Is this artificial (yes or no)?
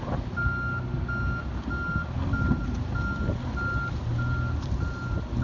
no